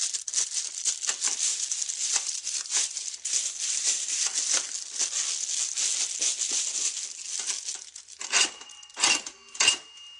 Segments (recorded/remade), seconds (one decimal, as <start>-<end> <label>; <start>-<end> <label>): 0.0-1.5 recorded; 1.5-4.2 remade; 4.2-10.2 recorded

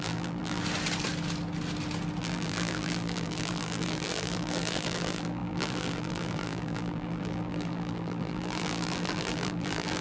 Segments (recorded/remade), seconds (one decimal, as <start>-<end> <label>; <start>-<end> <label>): 0.0-0.6 remade; 0.6-2.2 recorded; 2.2-10.0 remade

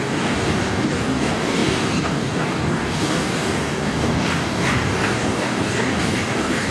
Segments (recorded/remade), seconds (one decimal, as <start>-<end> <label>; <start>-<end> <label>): 0.0-6.7 remade

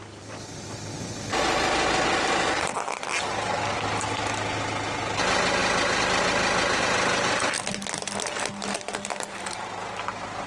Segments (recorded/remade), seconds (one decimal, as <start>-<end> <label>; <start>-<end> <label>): 0.0-10.5 recorded

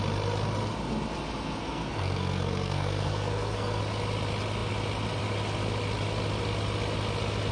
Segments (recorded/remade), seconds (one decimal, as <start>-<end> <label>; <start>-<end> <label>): 0.0-1.6 recorded; 1.6-3.8 remade; 3.8-7.5 recorded

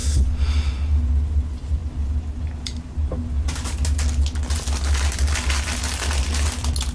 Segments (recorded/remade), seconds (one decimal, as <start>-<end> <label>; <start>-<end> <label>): 0.0-6.9 recorded